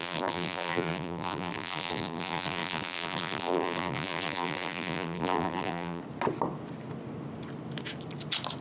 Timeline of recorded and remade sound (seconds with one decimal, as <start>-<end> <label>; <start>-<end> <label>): 0.0-6.0 remade; 6.0-8.6 recorded